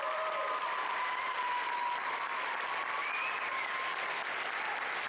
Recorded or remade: recorded